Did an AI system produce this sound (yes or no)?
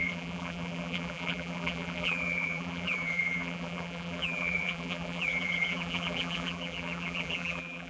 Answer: yes